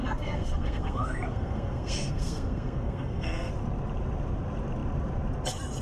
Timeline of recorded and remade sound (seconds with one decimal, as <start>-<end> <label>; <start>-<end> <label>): 0.0-3.5 remade; 3.5-5.8 recorded